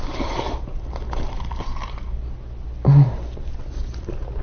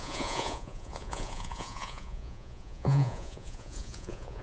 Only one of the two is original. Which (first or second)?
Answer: first